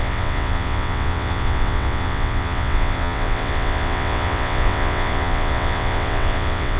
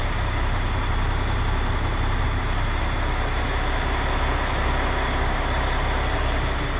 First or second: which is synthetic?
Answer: first